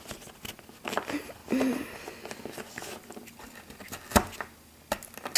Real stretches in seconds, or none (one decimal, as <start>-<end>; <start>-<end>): 0.0-5.4